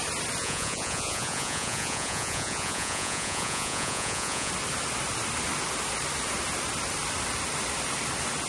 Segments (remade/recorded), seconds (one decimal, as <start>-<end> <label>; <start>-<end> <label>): 0.0-0.4 recorded; 0.4-4.5 remade; 4.5-8.5 recorded